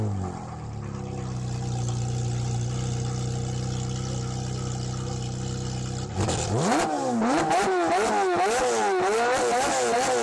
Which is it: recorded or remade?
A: recorded